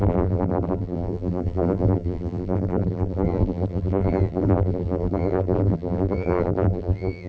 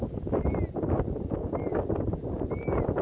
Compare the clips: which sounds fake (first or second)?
first